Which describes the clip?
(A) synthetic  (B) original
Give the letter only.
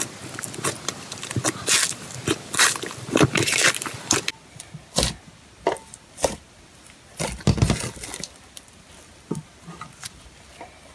B